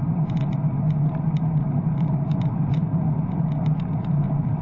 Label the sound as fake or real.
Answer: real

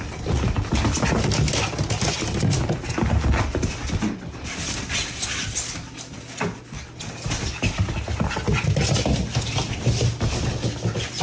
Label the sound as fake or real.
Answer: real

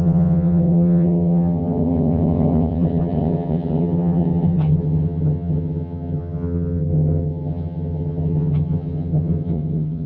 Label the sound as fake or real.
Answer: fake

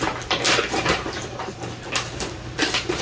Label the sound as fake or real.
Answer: real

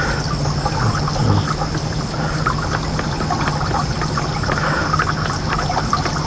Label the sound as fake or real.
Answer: real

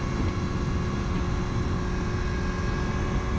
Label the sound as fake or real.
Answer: real